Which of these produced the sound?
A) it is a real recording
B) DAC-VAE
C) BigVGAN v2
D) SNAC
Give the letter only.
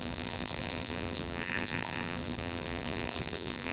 C